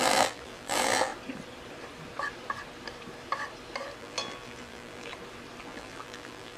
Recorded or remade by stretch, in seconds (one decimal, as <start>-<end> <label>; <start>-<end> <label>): 0.0-1.1 remade; 1.1-4.0 recorded; 4.0-5.1 remade; 5.1-5.6 recorded; 5.6-6.6 remade